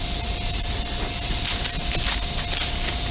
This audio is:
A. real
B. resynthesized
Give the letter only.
A